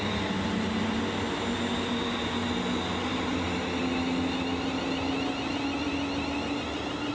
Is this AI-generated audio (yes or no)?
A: no